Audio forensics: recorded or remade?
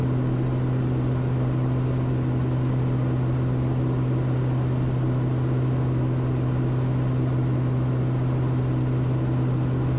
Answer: recorded